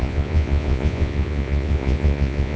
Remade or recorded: remade